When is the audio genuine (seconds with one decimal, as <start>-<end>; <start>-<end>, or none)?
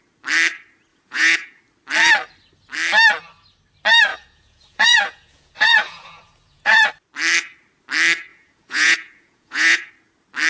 0.0-0.9; 1.6-4.1; 6.9-8.3; 9.9-10.5